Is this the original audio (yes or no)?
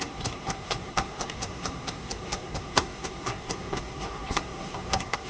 no